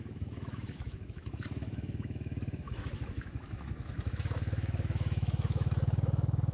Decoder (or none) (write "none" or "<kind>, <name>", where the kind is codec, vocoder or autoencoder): autoencoder, DAC-VAE